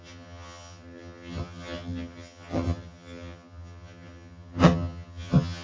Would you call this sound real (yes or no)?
no